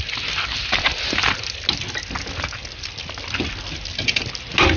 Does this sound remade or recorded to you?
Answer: recorded